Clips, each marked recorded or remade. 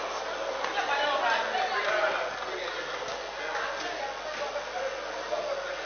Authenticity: recorded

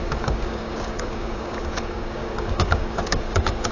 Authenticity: remade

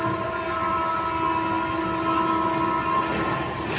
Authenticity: recorded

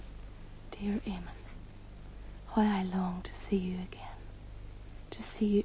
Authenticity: recorded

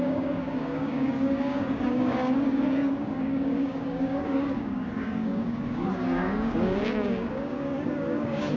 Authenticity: remade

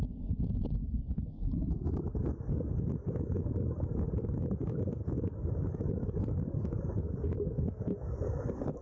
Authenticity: remade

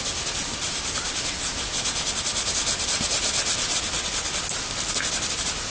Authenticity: recorded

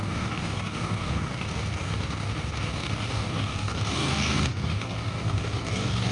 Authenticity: remade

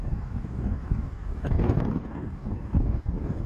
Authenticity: remade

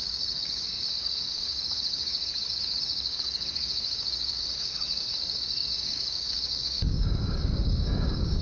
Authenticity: remade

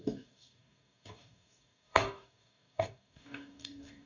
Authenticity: remade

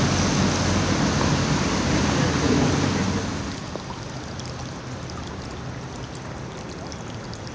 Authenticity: recorded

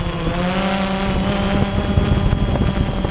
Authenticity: recorded